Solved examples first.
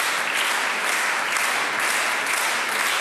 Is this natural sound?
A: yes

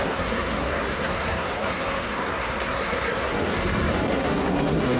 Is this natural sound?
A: no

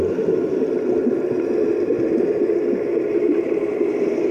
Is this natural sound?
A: yes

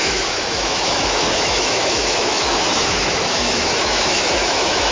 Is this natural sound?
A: no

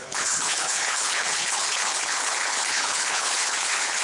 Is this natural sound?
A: no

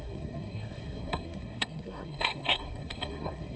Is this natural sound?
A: no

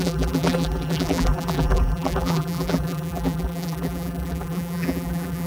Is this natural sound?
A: no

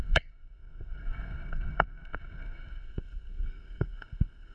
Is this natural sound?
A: no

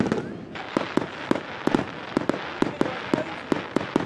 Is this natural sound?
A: yes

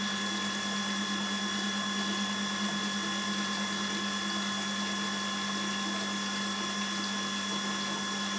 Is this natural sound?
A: yes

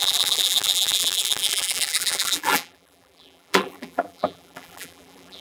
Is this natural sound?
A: no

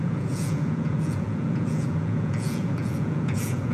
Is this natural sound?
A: no